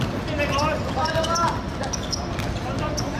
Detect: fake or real real